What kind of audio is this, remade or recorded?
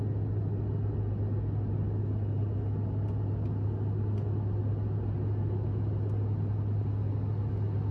recorded